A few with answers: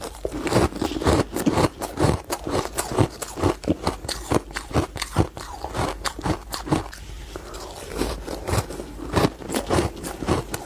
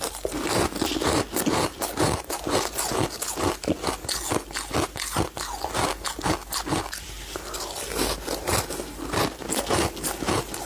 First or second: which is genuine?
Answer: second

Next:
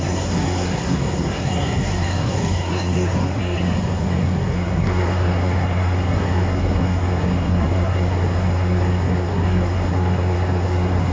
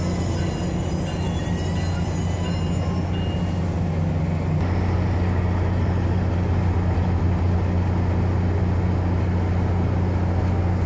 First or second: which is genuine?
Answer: second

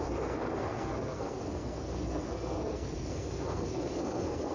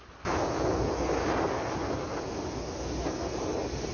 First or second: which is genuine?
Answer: second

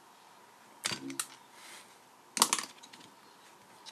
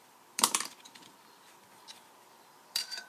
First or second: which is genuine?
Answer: first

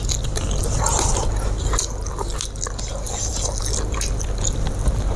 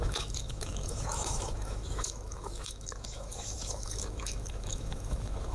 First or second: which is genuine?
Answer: first